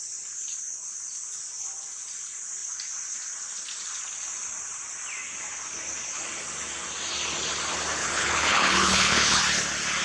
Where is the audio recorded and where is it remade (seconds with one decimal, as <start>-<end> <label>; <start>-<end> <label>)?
0.0-8.0 recorded; 8.0-9.4 remade; 9.4-10.0 recorded